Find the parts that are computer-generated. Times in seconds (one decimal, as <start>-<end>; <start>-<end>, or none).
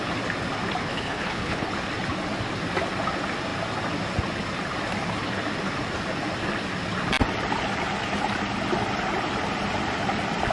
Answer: 0.8-1.7